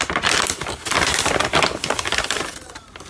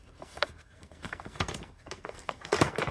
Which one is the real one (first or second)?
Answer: first